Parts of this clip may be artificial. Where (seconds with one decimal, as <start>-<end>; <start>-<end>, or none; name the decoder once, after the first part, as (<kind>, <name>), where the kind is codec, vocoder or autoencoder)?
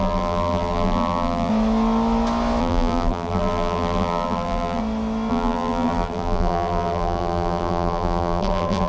0.0-1.5 (vocoder, BigVGAN v2); 2.6-4.8; 5.3-8.9